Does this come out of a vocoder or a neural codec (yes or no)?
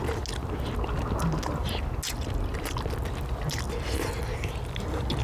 no